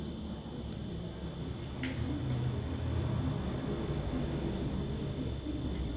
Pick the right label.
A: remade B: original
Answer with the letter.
B